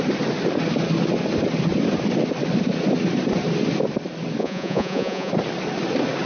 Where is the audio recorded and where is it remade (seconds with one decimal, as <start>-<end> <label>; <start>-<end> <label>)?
0.0-4.4 recorded; 4.4-5.3 remade; 5.3-6.3 recorded